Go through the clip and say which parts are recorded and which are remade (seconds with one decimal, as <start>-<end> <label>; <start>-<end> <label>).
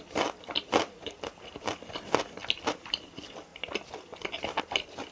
0.0-2.4 remade; 2.4-3.0 recorded; 3.0-3.5 remade; 3.5-4.6 recorded; 4.6-5.1 remade